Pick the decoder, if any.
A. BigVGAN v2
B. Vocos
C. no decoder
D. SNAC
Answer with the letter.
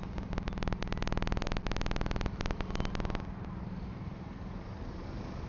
C